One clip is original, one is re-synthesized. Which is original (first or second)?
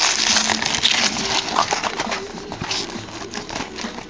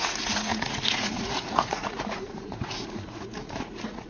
first